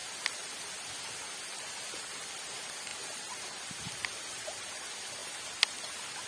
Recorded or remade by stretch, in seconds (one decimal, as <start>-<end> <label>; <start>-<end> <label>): 0.0-6.3 recorded